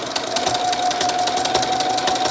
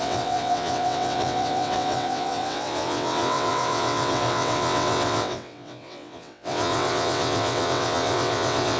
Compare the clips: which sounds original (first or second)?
first